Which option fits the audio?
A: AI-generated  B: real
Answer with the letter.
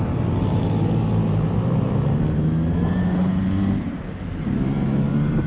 A